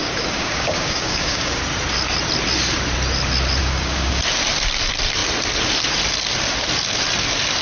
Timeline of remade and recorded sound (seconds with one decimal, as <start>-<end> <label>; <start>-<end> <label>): 0.0-1.6 remade; 1.6-3.6 recorded; 3.6-4.2 remade; 4.2-7.6 recorded